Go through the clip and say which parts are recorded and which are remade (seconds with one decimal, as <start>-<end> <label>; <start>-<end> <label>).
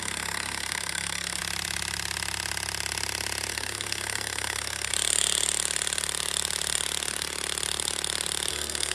0.0-1.4 remade; 1.4-3.5 recorded; 3.5-4.9 remade; 4.9-8.5 recorded; 8.5-8.9 remade